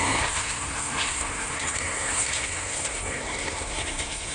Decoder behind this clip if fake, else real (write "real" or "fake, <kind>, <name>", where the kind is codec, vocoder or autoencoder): fake, codec, SNAC